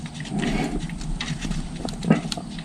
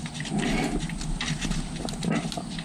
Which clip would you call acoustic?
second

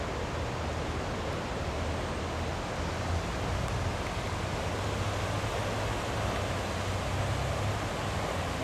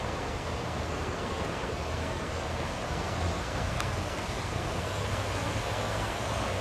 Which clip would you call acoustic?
first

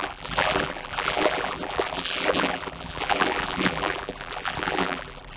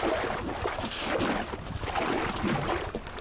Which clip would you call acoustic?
second